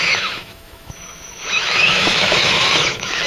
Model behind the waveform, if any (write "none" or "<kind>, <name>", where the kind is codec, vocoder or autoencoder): autoencoder, DAC-VAE